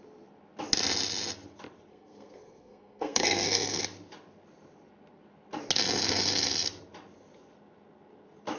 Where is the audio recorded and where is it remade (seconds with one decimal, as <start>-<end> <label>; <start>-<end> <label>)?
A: 0.0-1.9 recorded; 1.9-3.8 remade; 3.8-8.6 recorded